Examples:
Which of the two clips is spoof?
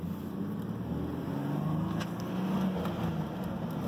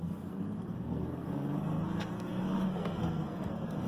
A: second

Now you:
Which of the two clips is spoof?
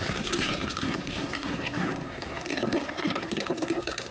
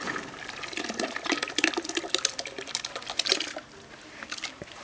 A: first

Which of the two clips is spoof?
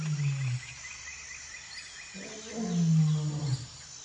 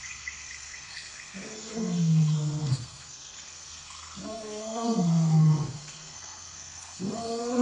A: second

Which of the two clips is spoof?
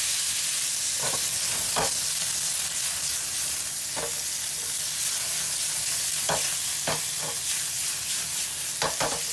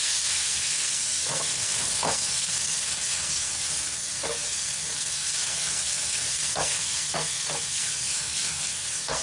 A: second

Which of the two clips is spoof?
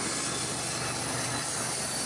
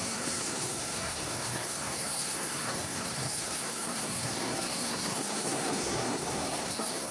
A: second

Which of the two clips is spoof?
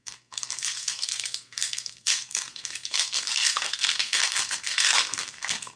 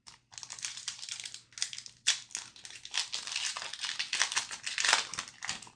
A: first